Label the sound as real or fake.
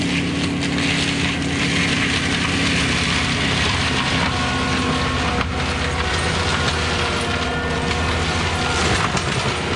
real